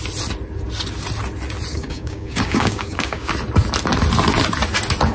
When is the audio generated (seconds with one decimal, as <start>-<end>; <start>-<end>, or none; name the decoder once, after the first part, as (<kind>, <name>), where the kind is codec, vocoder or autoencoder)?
1.7-3.3 (codec, DAC)